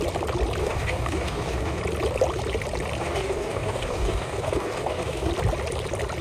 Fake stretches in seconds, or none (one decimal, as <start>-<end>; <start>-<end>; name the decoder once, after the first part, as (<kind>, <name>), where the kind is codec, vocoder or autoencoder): 0.6-1.8 (codec, DAC); 3.0-5.3